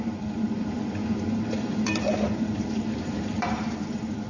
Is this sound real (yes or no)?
no